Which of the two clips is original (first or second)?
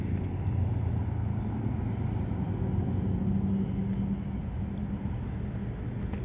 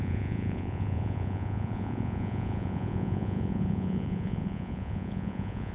first